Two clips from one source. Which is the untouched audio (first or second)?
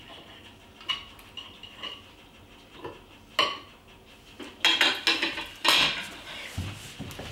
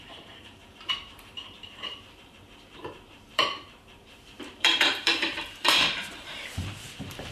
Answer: first